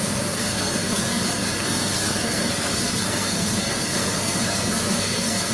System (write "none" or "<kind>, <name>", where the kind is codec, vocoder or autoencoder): codec, SNAC